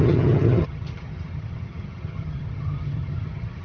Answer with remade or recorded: remade